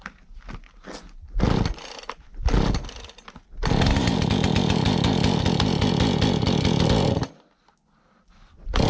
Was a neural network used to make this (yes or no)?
no